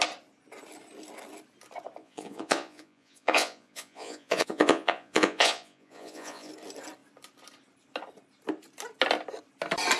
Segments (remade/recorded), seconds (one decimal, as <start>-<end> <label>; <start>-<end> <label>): 0.0-2.0 recorded; 2.0-6.5 remade; 6.5-10.0 recorded